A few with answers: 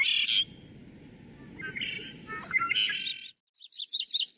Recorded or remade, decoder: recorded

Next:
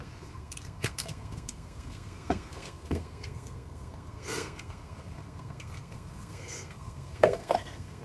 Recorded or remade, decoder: remade, codec, SNAC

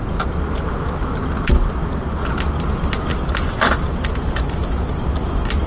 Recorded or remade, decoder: recorded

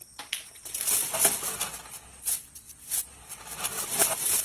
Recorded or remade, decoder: recorded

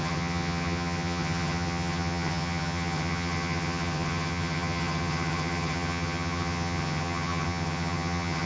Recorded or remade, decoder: remade, vocoder, HiFi-GAN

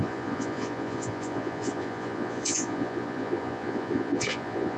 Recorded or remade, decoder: remade, vocoder, Vocos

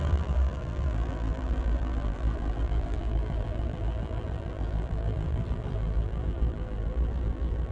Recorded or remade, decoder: remade, vocoder, BigVGAN v2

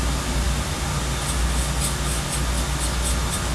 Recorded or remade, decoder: recorded